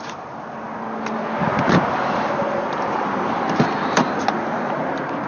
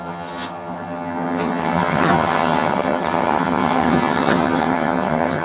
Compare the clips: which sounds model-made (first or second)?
second